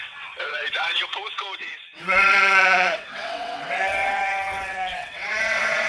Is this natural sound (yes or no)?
no